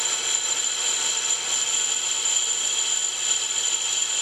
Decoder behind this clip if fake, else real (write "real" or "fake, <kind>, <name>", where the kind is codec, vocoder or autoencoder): real